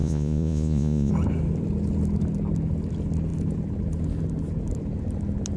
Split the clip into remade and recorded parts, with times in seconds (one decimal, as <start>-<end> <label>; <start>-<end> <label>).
0.0-1.1 remade; 1.1-5.6 recorded